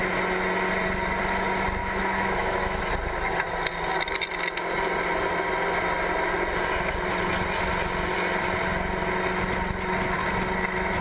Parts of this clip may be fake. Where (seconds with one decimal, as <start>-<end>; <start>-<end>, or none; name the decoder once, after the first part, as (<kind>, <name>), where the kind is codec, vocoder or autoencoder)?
1.8-2.8 (autoencoder, DAC-VAE)